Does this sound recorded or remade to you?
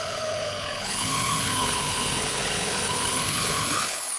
remade